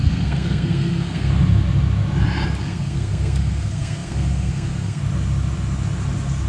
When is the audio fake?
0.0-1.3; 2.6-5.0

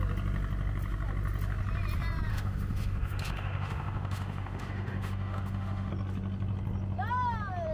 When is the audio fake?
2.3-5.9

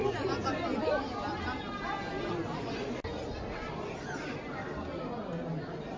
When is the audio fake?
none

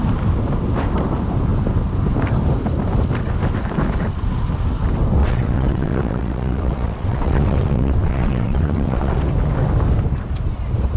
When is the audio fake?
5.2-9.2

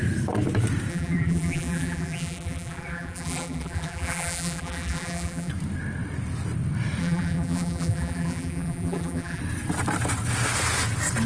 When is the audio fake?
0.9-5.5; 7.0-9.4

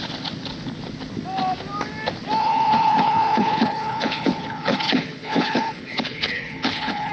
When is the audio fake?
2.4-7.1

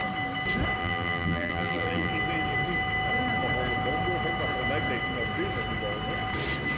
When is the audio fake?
0.8-2.1